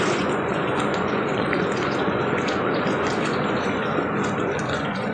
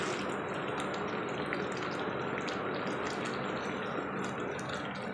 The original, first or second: second